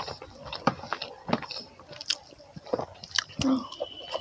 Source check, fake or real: real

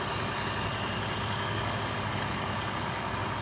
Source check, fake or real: fake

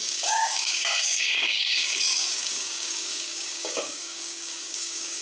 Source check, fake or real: fake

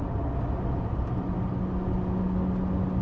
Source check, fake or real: real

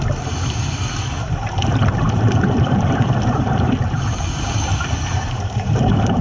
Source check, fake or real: fake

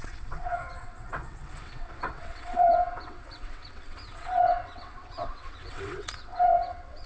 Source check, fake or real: fake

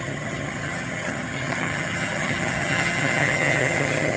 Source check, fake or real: fake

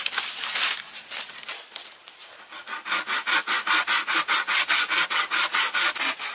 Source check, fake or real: real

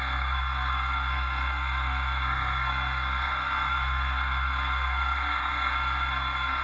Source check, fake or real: fake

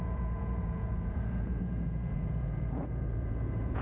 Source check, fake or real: fake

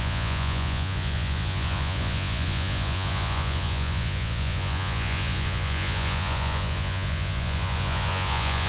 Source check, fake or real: fake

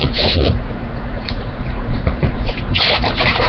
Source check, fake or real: fake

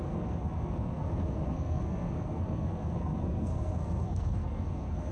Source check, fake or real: fake